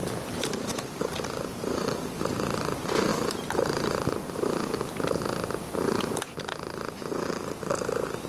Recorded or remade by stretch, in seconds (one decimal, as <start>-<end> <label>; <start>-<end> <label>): 0.0-2.6 remade; 2.6-8.3 recorded

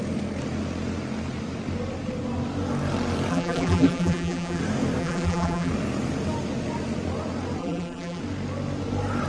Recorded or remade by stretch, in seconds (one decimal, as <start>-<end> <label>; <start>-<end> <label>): 0.0-3.3 recorded; 3.3-4.6 remade; 4.6-5.0 recorded; 5.0-5.7 remade; 5.7-7.6 recorded; 7.6-8.2 remade; 8.2-9.3 recorded

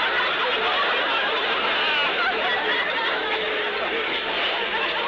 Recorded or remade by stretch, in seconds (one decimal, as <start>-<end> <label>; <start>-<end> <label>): 0.0-4.2 recorded; 4.2-5.1 remade